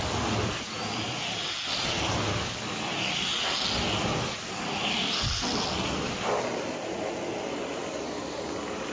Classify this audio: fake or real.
real